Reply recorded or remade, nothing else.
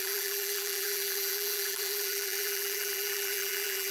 remade